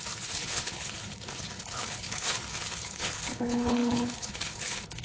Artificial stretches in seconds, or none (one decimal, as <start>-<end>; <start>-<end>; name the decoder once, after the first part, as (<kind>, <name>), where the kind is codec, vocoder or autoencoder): 0.0-5.0 (codec, HILCodec)